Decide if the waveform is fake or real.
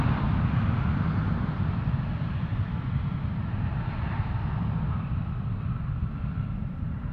fake